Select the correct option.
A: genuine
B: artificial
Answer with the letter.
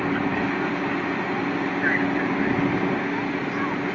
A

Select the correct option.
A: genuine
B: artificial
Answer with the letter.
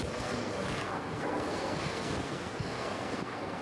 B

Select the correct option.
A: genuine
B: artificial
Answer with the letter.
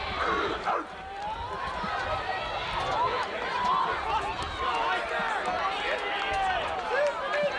A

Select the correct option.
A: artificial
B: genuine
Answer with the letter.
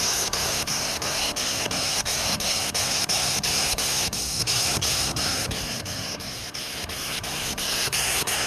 A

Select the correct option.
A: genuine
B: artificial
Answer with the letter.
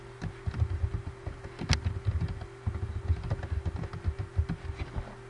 A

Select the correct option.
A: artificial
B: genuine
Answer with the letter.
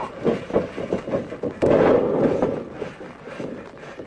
B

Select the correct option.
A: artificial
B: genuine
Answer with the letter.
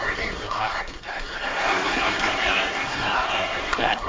A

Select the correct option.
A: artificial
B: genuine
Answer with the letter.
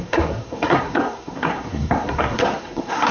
A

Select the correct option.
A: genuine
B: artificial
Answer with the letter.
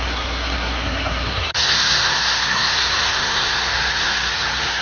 B